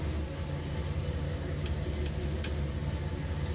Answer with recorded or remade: recorded